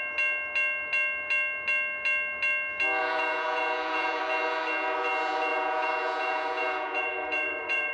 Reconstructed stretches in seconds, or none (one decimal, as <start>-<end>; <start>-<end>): 3.0-4.2; 5.5-7.9